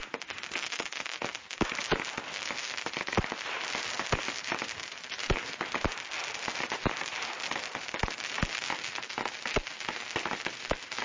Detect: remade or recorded recorded